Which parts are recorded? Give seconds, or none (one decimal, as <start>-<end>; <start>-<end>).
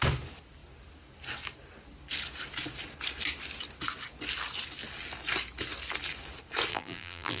0.0-6.7